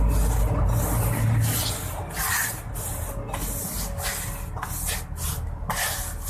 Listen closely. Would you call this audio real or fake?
real